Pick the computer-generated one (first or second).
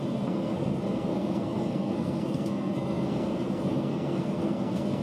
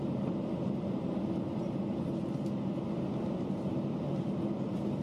first